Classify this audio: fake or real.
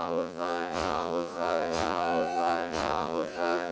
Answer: fake